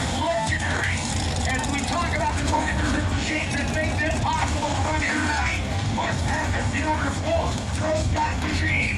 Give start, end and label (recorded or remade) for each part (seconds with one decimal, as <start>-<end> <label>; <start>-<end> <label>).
0.0-1.1 remade; 1.1-2.3 recorded; 2.3-3.5 remade; 3.5-4.4 recorded; 4.4-9.0 remade